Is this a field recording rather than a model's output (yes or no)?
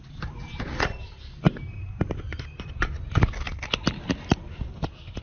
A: yes